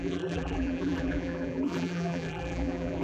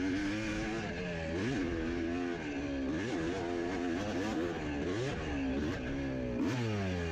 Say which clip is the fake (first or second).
first